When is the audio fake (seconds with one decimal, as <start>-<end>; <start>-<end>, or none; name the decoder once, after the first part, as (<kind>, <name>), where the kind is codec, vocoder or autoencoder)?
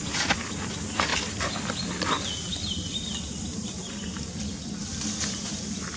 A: 1.1-3.6 (vocoder, BigVGAN v2)